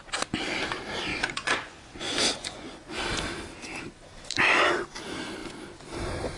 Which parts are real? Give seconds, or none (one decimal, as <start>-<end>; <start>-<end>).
0.0-1.1; 3.0-6.4